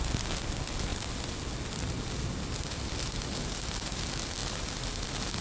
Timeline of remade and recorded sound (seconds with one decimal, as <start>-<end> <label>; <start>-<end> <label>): 0.0-5.4 recorded